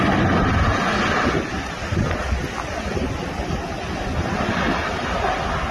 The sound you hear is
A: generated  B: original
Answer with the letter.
B